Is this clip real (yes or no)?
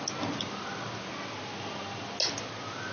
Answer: yes